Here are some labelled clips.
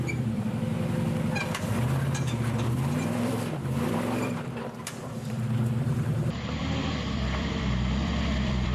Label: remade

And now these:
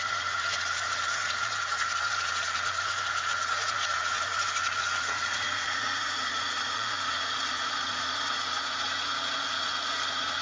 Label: remade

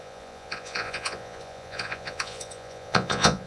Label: remade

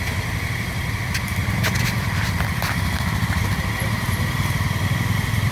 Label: recorded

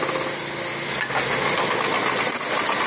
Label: recorded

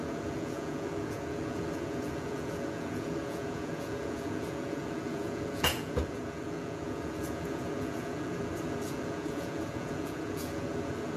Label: remade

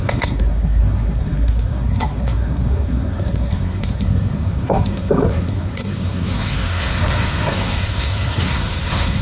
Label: remade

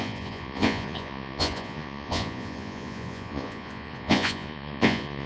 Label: remade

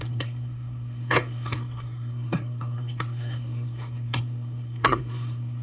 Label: remade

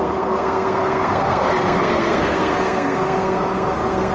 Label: remade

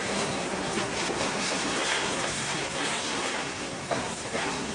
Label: remade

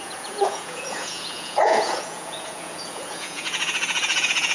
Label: remade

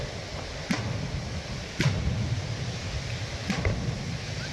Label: recorded